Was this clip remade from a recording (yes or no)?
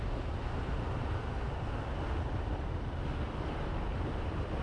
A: yes